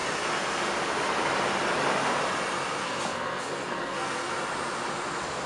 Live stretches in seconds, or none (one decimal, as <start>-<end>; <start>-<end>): 0.0-2.8; 4.3-5.5